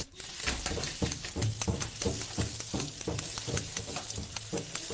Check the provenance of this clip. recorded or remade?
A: recorded